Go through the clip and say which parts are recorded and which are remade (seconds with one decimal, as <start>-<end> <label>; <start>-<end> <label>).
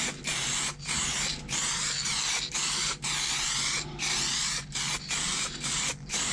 0.0-6.3 recorded